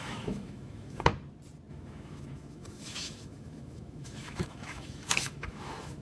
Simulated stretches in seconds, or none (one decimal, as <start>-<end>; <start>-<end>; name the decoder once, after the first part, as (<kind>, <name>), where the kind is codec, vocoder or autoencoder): 0.0-1.1 (autoencoder, DAC-VAE); 1.7-6.0